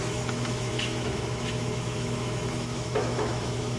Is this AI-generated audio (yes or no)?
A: yes